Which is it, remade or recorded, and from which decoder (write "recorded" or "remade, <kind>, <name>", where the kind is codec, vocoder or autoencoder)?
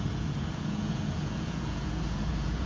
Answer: remade, vocoder, Vocos